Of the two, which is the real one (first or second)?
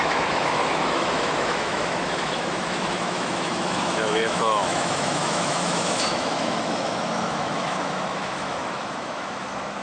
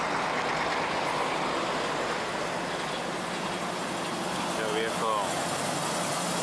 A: second